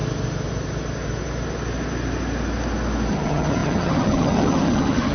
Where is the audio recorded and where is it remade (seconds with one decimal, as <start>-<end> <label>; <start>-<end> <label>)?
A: 0.0-3.1 recorded; 3.1-5.1 remade